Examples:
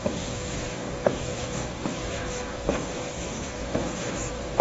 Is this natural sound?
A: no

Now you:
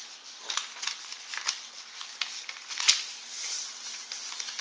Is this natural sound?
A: yes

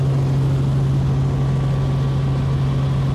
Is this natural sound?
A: yes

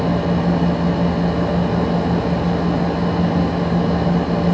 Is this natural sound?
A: yes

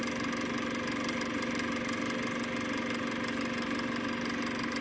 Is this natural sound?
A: yes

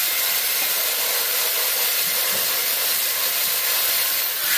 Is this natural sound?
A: yes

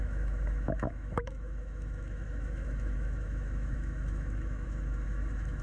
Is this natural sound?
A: no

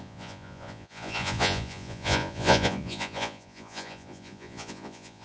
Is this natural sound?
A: no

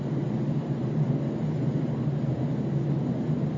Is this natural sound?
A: yes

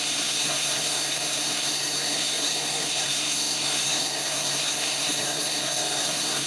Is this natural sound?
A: no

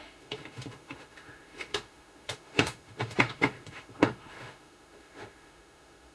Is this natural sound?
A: no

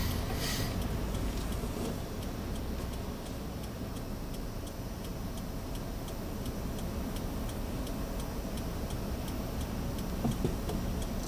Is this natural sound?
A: yes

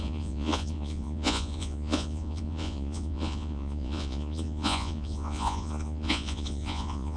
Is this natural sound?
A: no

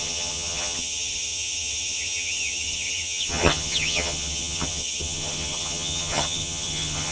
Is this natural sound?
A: no